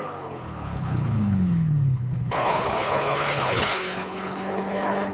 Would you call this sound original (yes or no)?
no